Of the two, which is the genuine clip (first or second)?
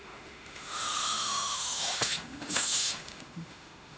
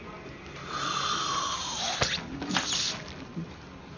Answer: second